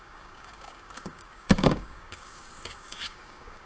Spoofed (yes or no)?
yes